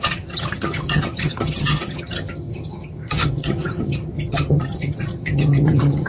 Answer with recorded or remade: remade